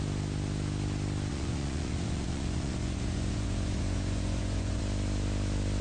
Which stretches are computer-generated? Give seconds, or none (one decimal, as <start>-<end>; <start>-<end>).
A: 1.3-4.8